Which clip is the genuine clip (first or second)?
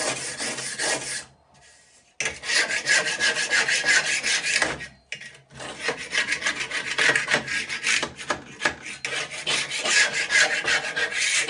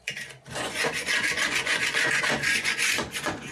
first